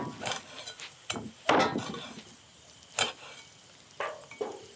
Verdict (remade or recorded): recorded